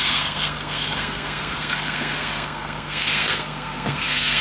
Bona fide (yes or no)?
no